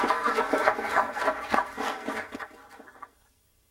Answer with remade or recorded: remade